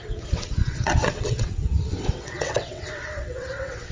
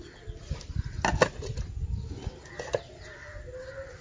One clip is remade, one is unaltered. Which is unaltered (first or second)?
second